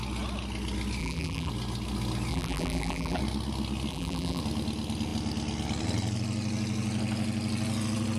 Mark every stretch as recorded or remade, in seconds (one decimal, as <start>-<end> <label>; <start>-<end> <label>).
0.0-1.0 recorded; 1.0-1.5 remade; 1.5-2.3 recorded; 2.3-3.2 remade; 3.2-3.9 recorded; 3.9-4.4 remade; 4.4-8.2 recorded

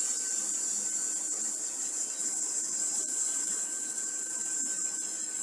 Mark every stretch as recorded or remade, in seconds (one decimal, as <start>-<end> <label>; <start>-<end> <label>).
0.0-1.3 recorded; 1.3-4.5 remade; 4.5-5.4 recorded

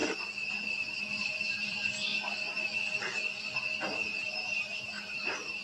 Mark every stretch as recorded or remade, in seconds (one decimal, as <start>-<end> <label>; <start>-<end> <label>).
0.0-4.4 recorded; 4.4-5.6 remade

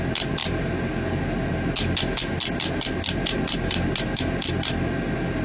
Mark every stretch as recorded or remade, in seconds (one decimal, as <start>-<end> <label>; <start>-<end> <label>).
0.0-5.4 recorded

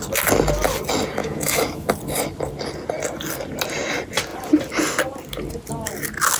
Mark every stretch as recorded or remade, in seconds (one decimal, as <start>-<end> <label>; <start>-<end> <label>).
0.0-1.2 recorded; 1.2-1.9 remade; 1.9-6.4 recorded

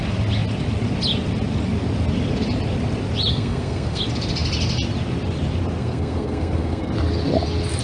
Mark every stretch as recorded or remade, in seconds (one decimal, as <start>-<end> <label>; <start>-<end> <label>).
0.0-3.3 recorded; 3.3-4.0 remade; 4.0-5.8 recorded; 5.8-6.9 remade; 6.9-7.8 recorded

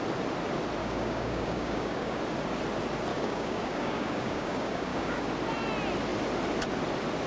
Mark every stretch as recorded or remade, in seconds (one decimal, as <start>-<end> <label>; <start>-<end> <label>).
0.0-0.8 recorded; 0.8-2.2 remade; 2.2-3.1 recorded; 3.1-5.3 remade; 5.3-7.3 recorded